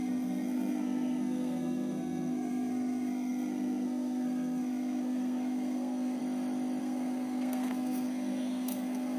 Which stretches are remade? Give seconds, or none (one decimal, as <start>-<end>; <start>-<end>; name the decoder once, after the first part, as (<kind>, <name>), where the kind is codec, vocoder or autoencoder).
0.0-6.2 (codec, SNAC); 6.8-9.2